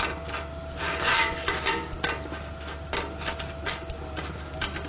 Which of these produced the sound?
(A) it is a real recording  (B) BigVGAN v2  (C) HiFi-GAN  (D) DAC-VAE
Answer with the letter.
B